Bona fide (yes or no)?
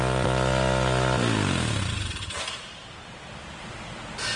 yes